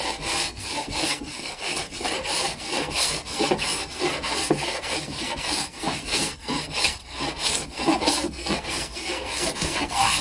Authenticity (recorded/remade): remade